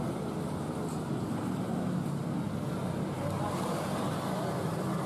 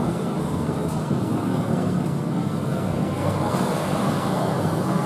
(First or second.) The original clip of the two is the first